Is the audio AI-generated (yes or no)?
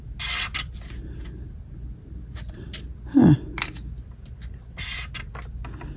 no